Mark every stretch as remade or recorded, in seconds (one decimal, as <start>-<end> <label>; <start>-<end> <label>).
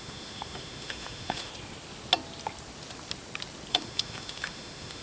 0.0-1.5 remade; 1.5-3.7 recorded; 3.7-5.0 remade